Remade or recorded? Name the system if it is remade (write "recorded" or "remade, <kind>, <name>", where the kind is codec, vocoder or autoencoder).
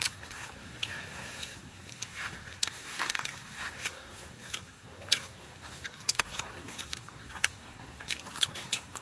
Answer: remade, codec, SNAC